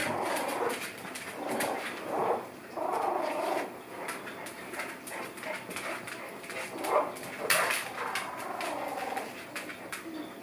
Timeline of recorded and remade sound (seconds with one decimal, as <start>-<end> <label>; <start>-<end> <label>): 0.0-10.4 recorded